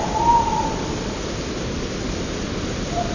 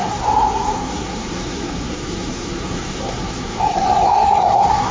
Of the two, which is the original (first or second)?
first